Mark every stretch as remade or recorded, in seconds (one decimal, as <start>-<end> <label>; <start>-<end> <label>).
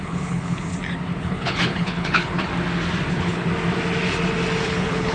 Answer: 0.0-0.7 remade; 0.7-1.2 recorded; 1.2-2.5 remade; 2.5-3.1 recorded; 3.1-3.5 remade; 3.5-4.6 recorded; 4.6-5.1 remade